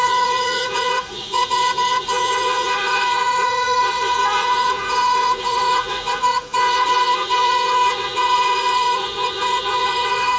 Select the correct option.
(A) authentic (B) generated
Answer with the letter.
B